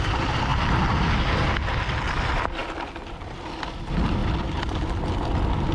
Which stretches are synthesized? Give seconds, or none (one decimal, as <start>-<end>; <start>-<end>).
none